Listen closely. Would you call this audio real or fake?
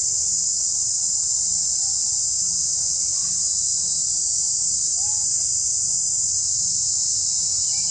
real